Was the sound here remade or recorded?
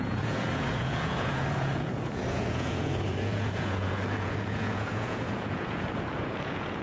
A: remade